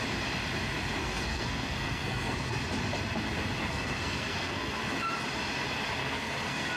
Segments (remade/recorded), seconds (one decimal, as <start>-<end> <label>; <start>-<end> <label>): 0.0-1.0 recorded; 1.0-2.6 remade; 2.6-3.6 recorded; 3.6-4.8 remade; 4.8-6.0 recorded; 6.0-6.8 remade